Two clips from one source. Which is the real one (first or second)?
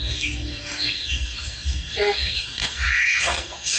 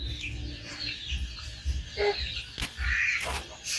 second